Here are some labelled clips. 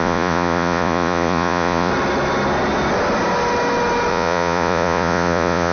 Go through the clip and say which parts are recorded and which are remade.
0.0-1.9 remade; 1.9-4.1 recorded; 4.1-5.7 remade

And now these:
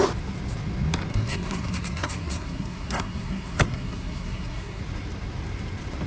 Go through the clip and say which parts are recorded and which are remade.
0.0-1.1 recorded; 1.1-4.8 remade; 4.8-6.1 recorded

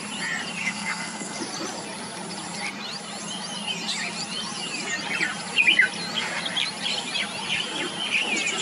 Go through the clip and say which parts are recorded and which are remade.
0.0-0.6 recorded; 0.6-1.4 remade; 1.4-8.6 recorded

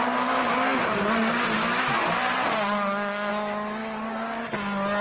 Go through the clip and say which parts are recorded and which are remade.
0.0-3.8 recorded; 3.8-5.0 remade

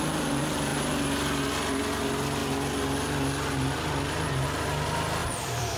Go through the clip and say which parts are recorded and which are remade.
0.0-5.2 recorded; 5.2-5.8 remade

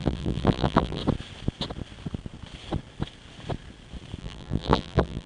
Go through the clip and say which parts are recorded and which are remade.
0.0-1.0 remade; 1.0-4.2 recorded; 4.2-5.3 remade